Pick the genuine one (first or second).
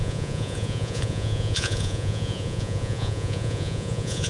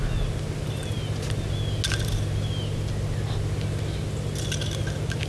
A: second